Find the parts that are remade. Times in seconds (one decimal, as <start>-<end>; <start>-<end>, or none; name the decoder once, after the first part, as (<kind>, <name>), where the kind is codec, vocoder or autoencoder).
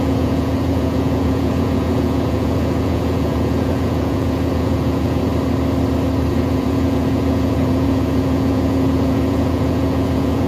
0.0-5.3 (vocoder, Vocos); 6.3-10.5